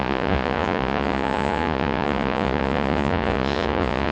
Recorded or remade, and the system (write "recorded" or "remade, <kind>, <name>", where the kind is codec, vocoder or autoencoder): remade, vocoder, Vocos